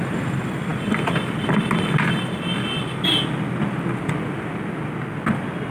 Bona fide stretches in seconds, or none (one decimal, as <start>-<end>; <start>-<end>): 0.0-5.7